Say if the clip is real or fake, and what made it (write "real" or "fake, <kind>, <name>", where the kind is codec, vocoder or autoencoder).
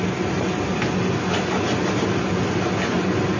real